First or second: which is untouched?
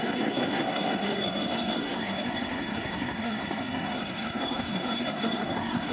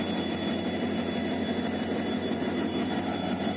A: second